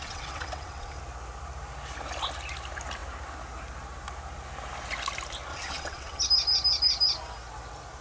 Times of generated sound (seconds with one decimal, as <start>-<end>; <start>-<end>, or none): 0.0-1.0; 5.5-6.2

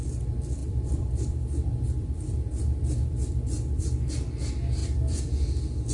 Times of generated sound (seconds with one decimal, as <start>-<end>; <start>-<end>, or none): 0.6-4.1; 4.8-5.9

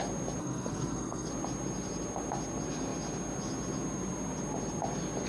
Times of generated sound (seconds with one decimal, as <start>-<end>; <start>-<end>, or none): 0.4-1.3

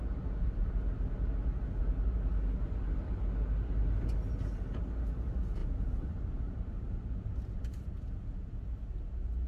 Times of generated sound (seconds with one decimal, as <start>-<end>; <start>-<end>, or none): 5.6-6.7

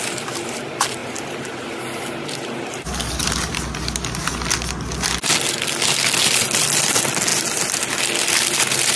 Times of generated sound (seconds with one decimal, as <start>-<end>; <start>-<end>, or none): none

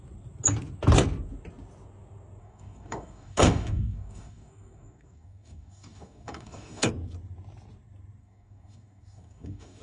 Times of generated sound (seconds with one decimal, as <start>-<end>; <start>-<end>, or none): 2.4-6.9; 8.2-9.8